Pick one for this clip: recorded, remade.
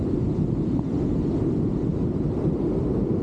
recorded